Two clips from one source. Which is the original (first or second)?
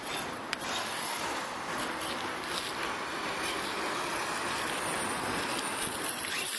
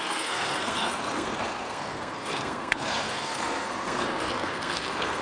first